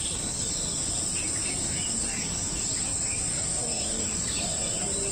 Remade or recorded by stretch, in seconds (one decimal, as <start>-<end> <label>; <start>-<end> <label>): 0.0-1.4 recorded; 1.4-4.4 remade; 4.4-5.1 recorded